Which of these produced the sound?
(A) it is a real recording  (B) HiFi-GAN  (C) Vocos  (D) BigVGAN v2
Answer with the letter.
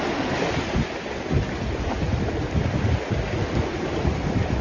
A